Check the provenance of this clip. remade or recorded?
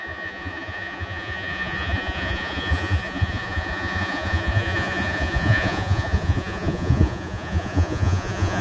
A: remade